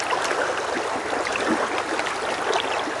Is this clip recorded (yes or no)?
yes